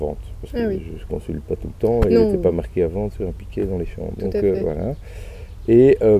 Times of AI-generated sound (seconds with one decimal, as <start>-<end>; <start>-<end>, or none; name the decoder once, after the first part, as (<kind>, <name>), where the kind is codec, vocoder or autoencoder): none

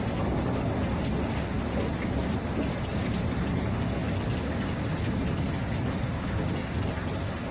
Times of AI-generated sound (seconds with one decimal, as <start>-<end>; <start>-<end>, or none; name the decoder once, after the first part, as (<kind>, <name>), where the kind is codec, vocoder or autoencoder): 1.9-2.9 (vocoder, BigVGAN v2)

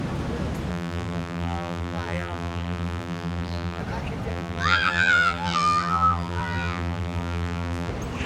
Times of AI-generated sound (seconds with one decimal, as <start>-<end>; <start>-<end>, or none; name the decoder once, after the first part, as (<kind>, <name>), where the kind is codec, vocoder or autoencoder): 0.7-3.8 (vocoder, BigVGAN v2); 4.3-7.9

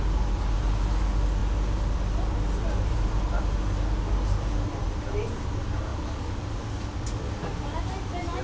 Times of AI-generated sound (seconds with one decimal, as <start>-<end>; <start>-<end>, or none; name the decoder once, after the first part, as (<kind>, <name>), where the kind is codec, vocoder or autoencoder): none

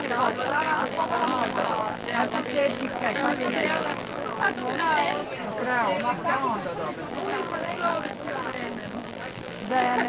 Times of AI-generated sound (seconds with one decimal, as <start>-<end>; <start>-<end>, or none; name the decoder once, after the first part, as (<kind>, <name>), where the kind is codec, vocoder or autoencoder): 0.0-5.2 (vocoder, BigVGAN v2); 7.1-10.1

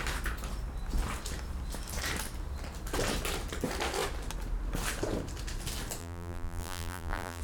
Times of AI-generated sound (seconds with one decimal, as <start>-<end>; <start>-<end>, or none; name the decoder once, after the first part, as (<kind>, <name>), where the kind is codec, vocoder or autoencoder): 6.0-7.4 (vocoder, BigVGAN v2)

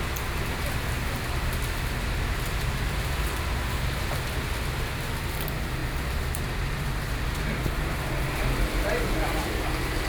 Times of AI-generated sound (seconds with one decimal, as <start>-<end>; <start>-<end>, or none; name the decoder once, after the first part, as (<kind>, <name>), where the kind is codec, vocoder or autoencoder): none

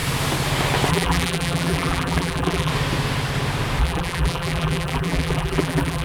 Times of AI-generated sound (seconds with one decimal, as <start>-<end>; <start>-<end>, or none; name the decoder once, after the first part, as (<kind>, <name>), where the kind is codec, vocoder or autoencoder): 0.9-2.7 (vocoder, BigVGAN v2); 3.8-6.0